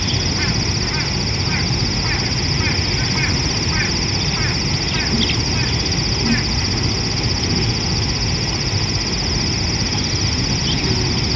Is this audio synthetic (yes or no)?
no